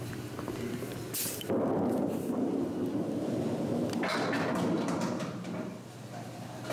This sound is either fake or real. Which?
real